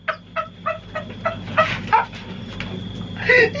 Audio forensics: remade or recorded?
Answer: recorded